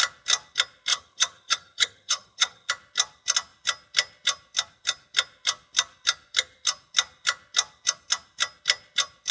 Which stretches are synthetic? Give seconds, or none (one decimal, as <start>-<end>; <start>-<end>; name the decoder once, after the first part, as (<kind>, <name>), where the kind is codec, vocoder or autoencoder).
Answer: 0.9-2.7 (vocoder, HiFi-GAN)